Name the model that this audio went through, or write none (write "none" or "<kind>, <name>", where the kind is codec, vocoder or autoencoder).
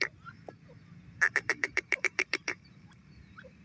vocoder, BigVGAN v2